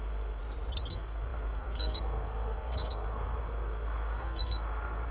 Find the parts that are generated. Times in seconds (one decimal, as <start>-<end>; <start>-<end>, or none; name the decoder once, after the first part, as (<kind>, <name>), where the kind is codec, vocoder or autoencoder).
0.0-0.4 (codec, SNAC); 0.9-5.1